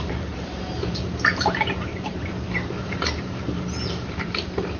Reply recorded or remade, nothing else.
remade